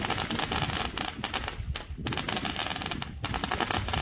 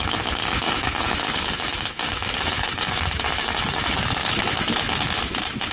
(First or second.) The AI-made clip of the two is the second